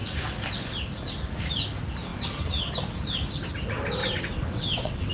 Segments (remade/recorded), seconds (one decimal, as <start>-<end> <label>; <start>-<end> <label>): 0.0-4.0 recorded; 4.0-5.1 remade